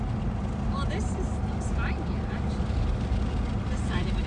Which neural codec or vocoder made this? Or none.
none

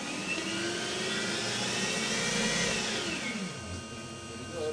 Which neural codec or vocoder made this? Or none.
none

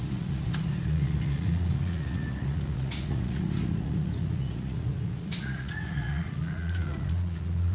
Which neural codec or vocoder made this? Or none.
vocoder, Vocos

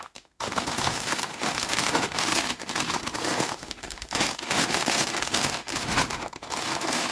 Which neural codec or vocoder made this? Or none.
autoencoder, DAC-VAE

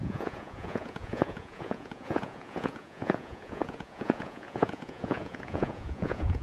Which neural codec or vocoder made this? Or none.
vocoder, Vocos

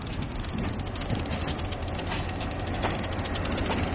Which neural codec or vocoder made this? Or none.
none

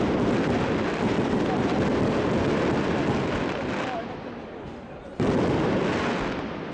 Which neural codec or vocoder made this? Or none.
vocoder, BigVGAN v2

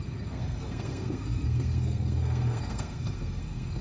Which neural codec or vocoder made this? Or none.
codec, SNAC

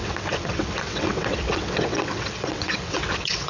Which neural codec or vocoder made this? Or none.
vocoder, WaveNeXt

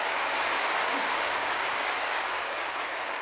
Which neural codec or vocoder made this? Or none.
codec, DAC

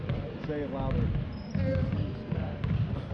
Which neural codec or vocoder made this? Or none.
none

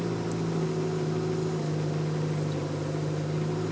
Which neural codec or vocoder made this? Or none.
none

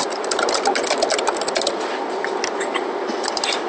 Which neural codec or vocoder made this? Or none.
none